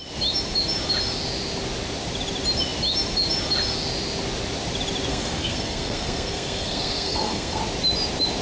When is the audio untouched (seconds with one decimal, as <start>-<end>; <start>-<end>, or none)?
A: 0.0-5.1; 7.6-8.4